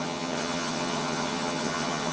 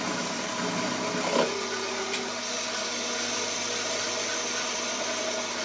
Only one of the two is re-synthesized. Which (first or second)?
first